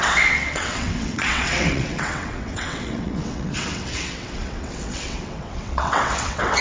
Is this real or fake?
fake